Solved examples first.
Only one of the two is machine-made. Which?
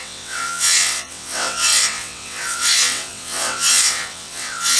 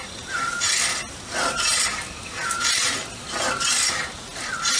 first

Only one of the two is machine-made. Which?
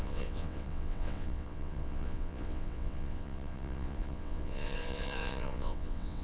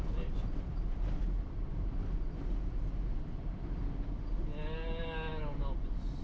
first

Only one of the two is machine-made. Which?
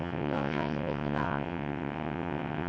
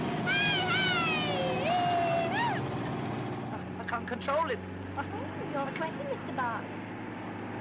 first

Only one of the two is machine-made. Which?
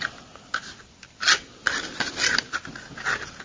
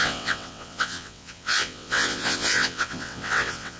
second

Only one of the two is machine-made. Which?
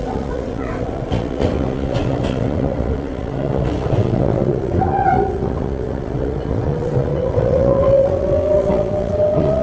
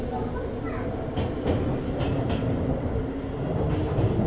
first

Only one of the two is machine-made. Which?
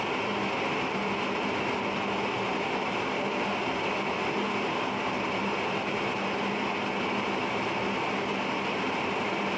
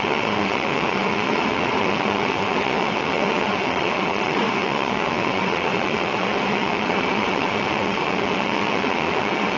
second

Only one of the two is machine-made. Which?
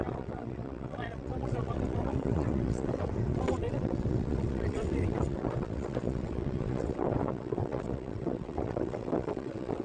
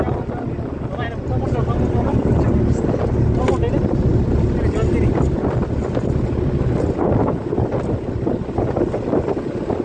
first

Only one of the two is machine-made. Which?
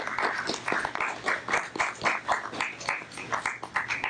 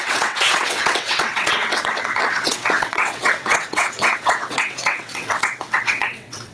second